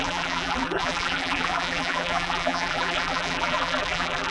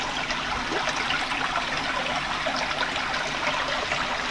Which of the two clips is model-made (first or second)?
first